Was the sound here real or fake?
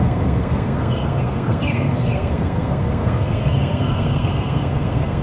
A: fake